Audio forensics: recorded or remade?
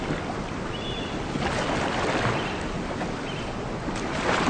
recorded